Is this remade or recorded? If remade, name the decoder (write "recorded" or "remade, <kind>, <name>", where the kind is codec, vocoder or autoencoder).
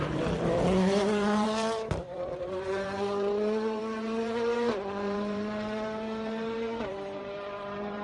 remade, vocoder, BigVGAN v2